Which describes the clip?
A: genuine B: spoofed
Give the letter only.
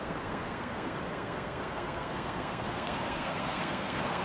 B